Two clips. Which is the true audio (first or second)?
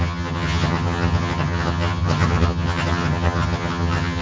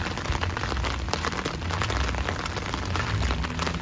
second